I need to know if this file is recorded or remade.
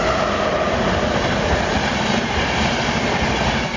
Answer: recorded